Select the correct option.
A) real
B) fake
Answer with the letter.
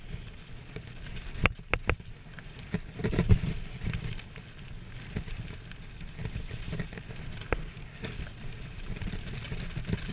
A